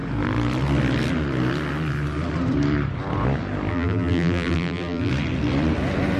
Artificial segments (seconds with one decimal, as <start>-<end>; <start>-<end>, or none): 3.7-5.1